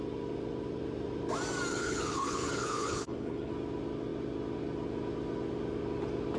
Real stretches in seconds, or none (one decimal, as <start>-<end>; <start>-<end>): 0.0-1.7; 3.5-6.4